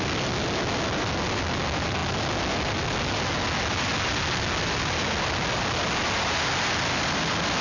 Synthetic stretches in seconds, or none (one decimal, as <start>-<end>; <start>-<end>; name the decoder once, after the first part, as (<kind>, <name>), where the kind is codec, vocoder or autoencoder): none